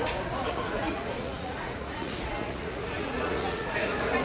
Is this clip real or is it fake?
fake